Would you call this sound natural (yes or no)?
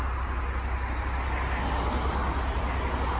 yes